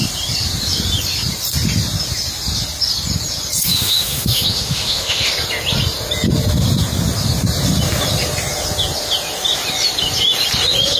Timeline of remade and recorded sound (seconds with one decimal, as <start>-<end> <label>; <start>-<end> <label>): 0.0-3.7 recorded; 3.7-5.3 remade; 5.3-11.0 recorded

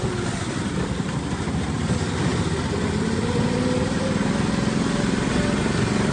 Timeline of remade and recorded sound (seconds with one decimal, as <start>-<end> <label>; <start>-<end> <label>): 0.0-2.3 remade; 2.3-5.6 recorded; 5.6-6.1 remade

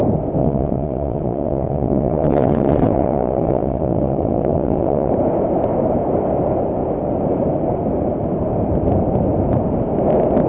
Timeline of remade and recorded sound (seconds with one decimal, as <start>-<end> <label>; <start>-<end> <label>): 0.0-0.4 recorded; 0.4-5.1 remade; 5.1-10.5 recorded

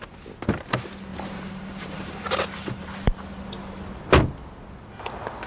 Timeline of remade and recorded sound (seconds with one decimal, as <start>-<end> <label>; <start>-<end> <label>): 0.0-1.1 recorded; 1.1-3.2 remade; 3.2-5.5 recorded

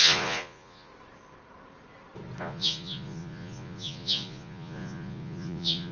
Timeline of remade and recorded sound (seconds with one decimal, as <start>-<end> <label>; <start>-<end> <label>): 0.0-0.9 remade; 0.9-2.4 recorded; 2.4-5.9 remade

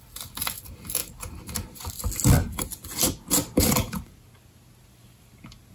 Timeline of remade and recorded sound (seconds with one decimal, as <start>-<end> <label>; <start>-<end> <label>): 0.0-5.7 recorded

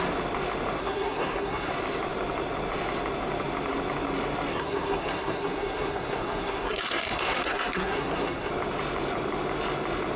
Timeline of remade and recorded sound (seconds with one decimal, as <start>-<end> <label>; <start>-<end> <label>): 0.0-0.8 recorded; 0.8-1.7 remade; 1.7-4.5 recorded; 4.5-8.5 remade; 8.5-10.2 recorded